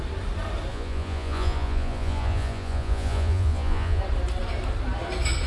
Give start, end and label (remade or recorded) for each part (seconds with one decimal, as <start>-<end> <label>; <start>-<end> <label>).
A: 0.0-0.7 recorded; 0.7-4.0 remade; 4.0-5.5 recorded